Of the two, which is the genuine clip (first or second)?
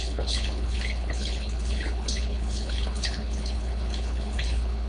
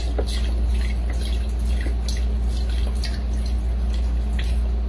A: second